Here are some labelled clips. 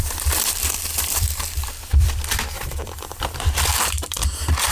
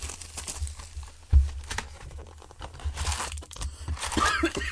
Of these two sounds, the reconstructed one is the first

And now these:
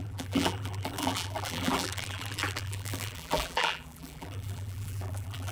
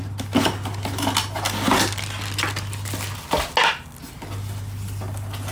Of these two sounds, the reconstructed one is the first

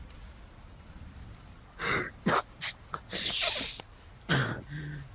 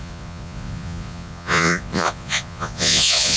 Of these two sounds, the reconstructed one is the second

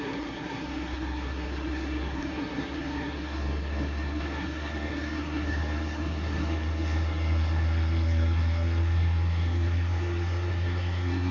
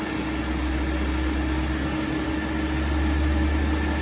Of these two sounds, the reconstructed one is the first